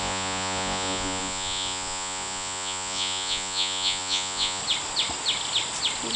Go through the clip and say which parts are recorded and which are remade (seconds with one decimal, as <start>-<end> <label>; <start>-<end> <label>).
0.0-4.6 remade; 4.6-6.2 recorded